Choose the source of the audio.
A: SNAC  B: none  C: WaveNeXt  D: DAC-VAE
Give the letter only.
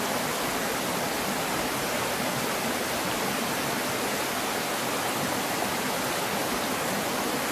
B